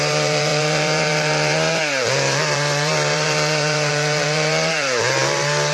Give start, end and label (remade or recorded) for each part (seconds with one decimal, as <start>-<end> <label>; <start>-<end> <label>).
0.0-5.7 remade